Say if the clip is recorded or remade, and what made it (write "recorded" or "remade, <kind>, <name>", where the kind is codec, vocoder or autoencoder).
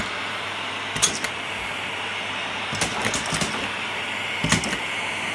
recorded